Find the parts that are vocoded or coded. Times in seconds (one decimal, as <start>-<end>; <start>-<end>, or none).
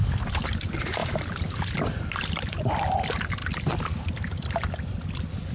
1.0-2.8